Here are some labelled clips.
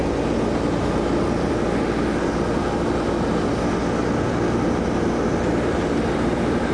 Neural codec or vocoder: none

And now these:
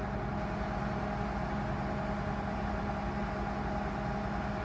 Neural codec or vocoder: none